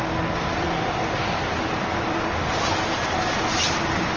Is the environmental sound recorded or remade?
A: recorded